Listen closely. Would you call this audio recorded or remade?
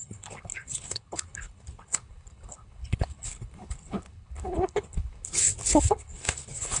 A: remade